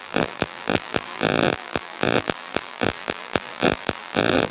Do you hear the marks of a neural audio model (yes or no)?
yes